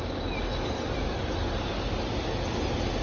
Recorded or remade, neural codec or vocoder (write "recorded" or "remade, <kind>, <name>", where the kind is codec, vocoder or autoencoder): recorded